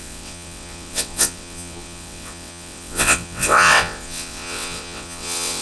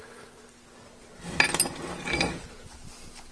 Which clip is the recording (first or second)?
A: second